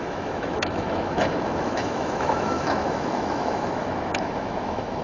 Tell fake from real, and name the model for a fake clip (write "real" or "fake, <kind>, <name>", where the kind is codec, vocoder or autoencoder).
fake, autoencoder, DAC-VAE